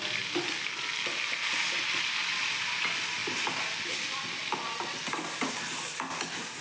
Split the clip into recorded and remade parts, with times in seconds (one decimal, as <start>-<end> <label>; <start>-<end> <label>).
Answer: 0.0-6.6 recorded